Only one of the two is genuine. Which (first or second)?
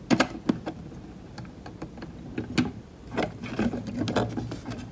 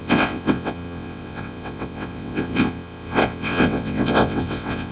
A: first